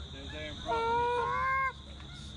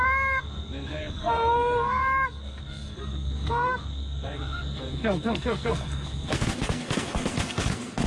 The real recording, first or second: first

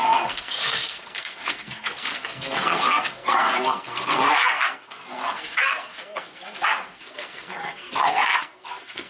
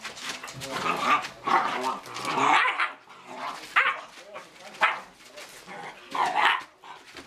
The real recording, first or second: second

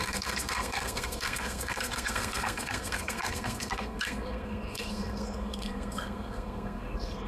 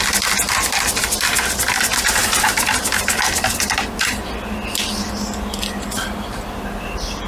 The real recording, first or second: second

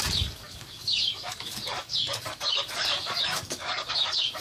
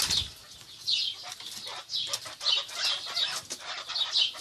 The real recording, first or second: second